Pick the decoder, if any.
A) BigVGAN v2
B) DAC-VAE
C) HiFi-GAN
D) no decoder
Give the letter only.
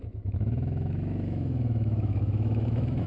B